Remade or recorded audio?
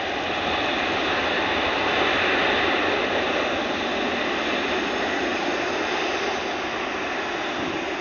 recorded